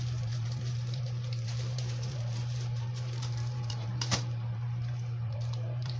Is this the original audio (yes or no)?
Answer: no